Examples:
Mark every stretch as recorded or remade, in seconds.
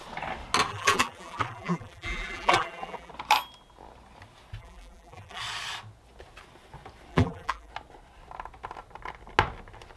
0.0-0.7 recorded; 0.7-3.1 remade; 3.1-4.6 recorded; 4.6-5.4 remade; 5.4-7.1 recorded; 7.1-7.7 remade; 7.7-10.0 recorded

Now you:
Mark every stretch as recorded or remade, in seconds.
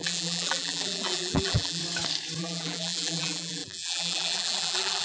0.0-1.8 remade; 1.8-2.4 recorded; 2.4-5.0 remade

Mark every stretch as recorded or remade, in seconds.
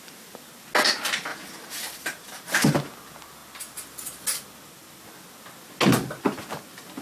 0.0-1.3 recorded; 1.3-2.9 remade; 2.9-7.0 recorded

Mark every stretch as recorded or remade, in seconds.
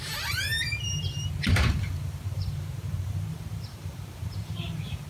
0.0-5.1 remade